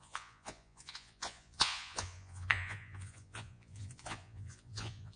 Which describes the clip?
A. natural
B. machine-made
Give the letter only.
B